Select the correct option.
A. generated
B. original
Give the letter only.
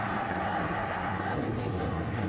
A